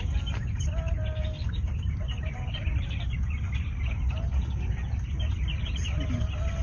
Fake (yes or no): no